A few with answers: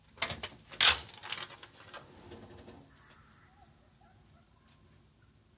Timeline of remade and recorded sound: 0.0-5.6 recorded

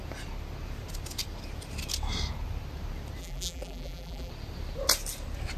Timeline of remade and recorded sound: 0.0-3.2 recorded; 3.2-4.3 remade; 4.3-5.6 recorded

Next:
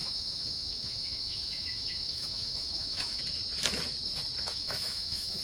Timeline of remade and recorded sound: 0.0-3.2 remade; 3.2-4.5 recorded; 4.5-5.4 remade